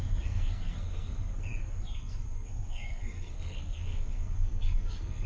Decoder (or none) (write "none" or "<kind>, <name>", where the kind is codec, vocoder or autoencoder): codec, SNAC